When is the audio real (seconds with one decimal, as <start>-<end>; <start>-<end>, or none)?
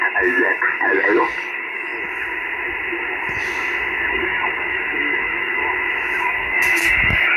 1.9-4.1; 5.6-6.2